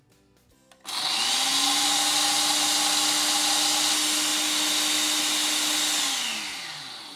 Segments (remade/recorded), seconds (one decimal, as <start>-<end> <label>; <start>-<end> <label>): 0.0-7.2 recorded